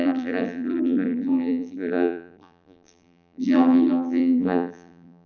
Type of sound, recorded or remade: remade